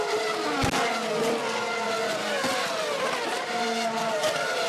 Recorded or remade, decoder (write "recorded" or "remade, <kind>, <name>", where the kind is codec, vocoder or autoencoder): recorded